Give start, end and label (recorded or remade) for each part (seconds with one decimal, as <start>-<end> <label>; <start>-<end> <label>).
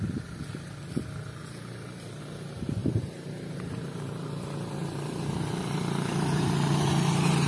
0.0-1.4 recorded; 1.4-2.2 remade; 2.2-2.8 recorded; 2.8-7.5 remade